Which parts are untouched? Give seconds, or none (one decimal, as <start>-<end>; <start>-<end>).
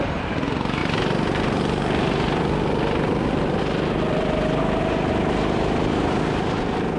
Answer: 0.0-7.0